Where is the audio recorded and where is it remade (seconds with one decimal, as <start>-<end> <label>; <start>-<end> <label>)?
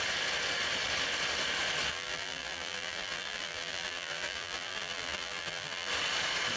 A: 0.0-1.9 recorded; 1.9-5.9 remade; 5.9-6.6 recorded